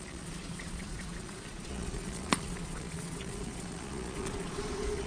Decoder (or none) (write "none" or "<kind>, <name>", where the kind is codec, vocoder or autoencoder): vocoder, Vocos